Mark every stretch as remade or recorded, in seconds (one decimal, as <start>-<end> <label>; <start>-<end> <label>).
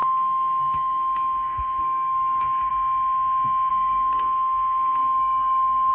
0.0-2.7 remade; 2.7-3.7 recorded; 3.7-5.9 remade